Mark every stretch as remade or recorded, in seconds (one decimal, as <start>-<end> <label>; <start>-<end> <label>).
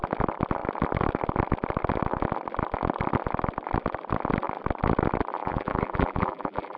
0.0-5.4 recorded; 5.4-6.8 remade